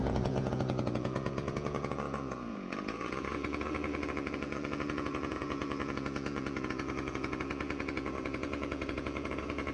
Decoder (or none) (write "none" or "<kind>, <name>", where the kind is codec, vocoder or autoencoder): vocoder, Vocos